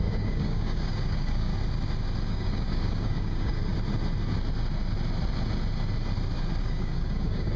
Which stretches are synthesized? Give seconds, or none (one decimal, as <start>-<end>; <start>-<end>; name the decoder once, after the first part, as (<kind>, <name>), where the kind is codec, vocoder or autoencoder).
0.0-1.5 (codec, DAC); 2.3-3.6; 6.6-7.6